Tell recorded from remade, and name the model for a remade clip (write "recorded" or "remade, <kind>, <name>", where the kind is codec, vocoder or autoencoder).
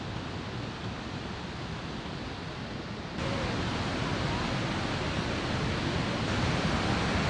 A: recorded